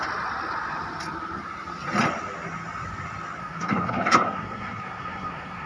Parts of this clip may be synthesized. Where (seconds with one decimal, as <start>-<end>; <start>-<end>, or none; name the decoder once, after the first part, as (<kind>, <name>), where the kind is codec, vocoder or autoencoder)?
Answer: 3.4-5.7 (codec, SNAC)